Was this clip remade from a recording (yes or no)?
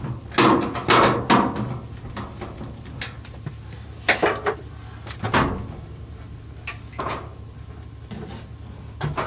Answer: no